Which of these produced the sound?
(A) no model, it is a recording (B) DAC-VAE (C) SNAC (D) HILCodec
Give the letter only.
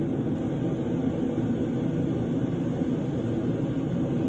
A